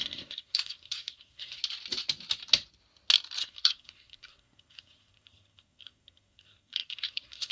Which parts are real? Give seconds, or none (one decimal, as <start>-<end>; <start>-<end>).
1.6-3.4